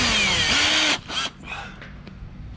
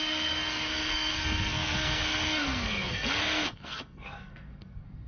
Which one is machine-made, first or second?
second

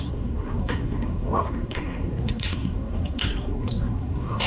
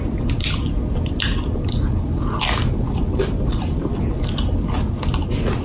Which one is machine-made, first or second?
first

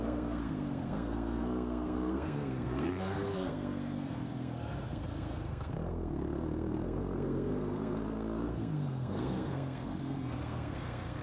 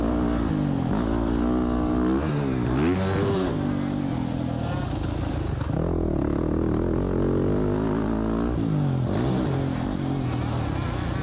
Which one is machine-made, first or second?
first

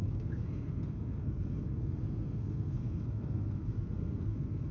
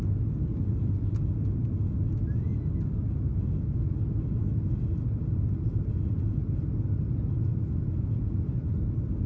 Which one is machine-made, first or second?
first